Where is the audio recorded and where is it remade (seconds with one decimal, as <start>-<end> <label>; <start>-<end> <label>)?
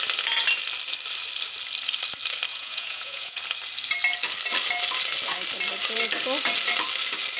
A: 0.0-2.5 recorded; 2.5-3.4 remade; 3.4-7.4 recorded